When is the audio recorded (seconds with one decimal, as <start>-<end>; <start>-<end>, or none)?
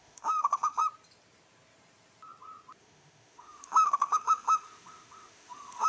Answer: 0.8-2.8